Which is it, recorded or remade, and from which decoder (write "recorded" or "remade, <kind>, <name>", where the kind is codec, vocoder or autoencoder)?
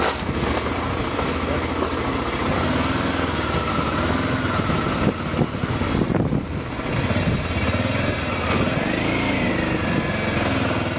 recorded